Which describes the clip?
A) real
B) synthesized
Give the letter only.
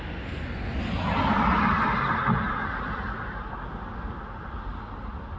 A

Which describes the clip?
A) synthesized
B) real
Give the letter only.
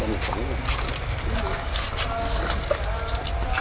B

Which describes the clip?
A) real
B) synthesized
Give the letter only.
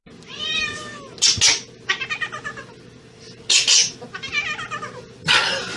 A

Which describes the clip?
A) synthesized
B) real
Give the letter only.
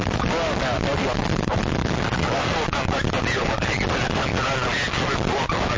B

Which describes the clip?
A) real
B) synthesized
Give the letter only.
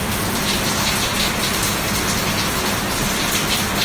A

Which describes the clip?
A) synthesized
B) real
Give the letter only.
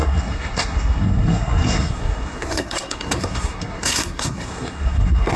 A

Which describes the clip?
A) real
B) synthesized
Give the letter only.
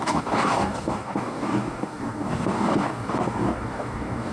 B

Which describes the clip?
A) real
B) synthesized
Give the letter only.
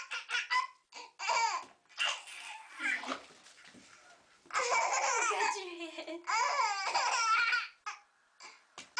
A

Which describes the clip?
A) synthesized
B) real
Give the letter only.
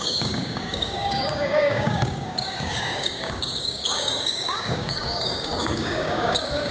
A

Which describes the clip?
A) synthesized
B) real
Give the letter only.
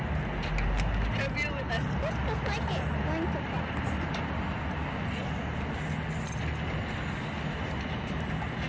B